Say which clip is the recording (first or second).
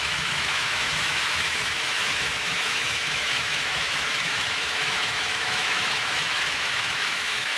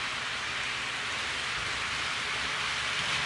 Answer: second